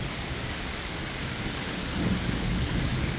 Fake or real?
fake